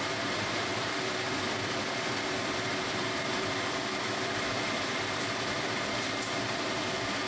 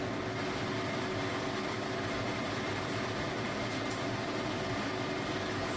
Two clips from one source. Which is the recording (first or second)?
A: second